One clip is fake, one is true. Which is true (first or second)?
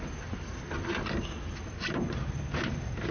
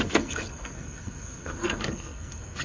first